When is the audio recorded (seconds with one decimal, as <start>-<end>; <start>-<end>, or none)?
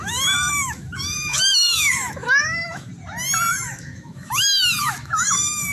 2.9-3.5